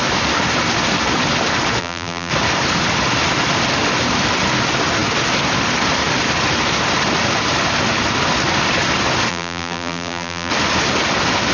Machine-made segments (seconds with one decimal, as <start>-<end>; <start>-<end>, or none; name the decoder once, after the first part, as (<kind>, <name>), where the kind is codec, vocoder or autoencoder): 1.8-2.3 (vocoder, BigVGAN v2); 9.3-10.5